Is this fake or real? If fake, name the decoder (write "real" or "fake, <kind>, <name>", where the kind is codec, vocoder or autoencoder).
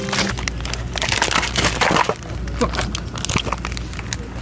real